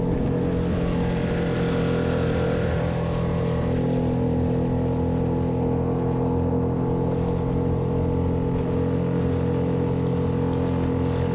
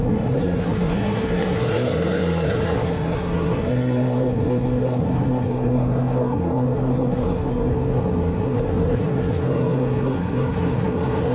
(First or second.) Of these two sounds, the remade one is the second